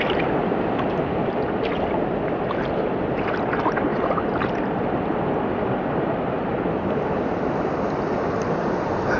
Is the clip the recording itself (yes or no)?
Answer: yes